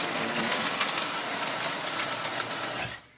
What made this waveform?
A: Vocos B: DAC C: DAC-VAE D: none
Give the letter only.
D